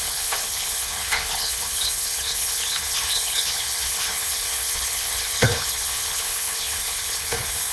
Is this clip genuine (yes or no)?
no